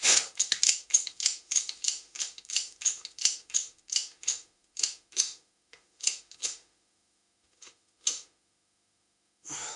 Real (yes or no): no